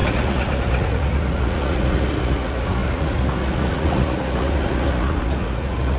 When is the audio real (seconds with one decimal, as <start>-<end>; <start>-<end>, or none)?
none